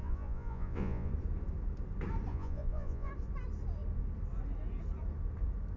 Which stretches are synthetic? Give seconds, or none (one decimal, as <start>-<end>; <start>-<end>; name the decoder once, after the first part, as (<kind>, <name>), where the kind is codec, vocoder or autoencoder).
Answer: 0.0-1.1 (vocoder, Vocos); 2.3-3.1